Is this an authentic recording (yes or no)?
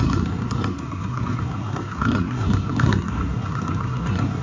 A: no